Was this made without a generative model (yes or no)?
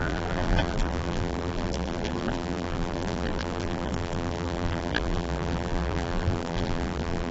no